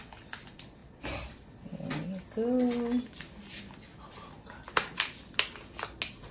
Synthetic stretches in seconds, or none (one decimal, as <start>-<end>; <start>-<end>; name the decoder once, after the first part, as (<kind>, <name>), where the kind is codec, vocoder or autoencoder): none